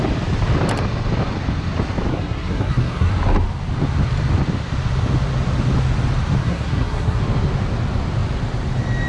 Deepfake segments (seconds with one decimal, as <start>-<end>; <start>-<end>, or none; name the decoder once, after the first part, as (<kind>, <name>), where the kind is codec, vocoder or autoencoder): 2.1-3.1 (codec, SNAC); 6.4-7.2